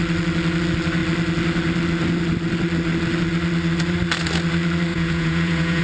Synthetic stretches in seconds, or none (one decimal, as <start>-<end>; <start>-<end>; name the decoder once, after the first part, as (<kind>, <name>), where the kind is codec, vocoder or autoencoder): 4.9-5.8 (vocoder, Vocos)